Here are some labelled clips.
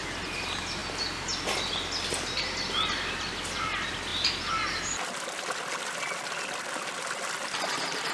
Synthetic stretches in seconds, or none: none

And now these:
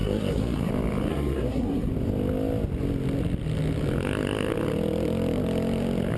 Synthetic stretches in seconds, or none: 0.0-0.7 (codec, SNAC); 1.1-1.9

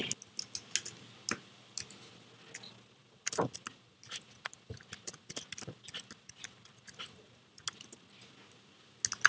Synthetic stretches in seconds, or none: none

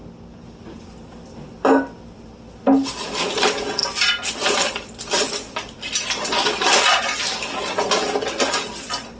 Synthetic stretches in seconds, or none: none

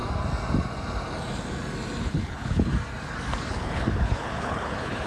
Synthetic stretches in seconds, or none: 2.0-2.7 (codec, HILCodec); 3.5-5.1

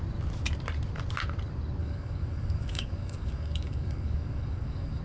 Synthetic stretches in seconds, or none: 1.8-5.0 (codec, DAC)

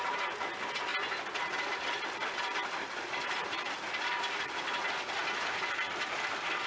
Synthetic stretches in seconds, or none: 0.0-0.9 (vocoder, BigVGAN v2); 1.5-3.6; 4.1-5.2; 5.8-6.7